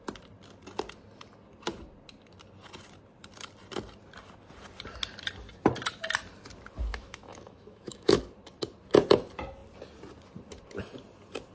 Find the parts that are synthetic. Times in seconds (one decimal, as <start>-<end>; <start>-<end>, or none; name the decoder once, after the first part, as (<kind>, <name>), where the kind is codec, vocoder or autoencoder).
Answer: 6.9-8.2 (autoencoder, DAC-VAE)